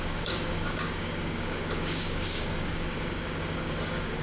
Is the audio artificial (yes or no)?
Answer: yes